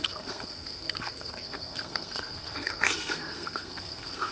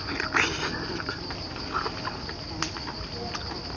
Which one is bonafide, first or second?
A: second